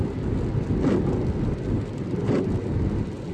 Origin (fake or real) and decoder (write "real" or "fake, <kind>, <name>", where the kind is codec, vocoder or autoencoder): real